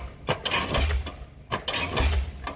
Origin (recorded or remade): recorded